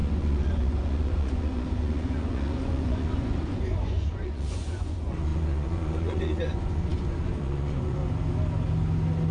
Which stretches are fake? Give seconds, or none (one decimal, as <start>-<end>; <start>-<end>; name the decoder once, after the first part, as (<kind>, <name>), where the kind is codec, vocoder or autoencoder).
0.0-8.0 (vocoder, Vocos)